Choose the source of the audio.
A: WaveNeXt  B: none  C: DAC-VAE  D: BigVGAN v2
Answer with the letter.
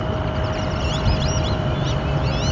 B